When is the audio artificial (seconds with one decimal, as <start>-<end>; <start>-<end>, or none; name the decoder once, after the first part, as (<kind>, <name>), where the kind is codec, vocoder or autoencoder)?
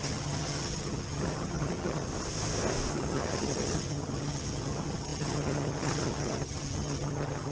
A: 0.0-2.1 (vocoder, HiFi-GAN); 2.9-7.5